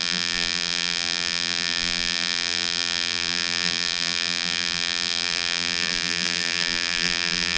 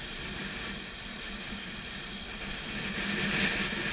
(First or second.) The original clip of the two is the second